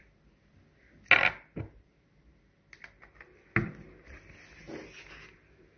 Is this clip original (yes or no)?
yes